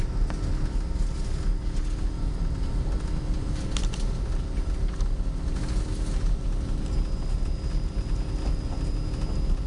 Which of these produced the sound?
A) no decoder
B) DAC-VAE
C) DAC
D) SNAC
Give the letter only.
A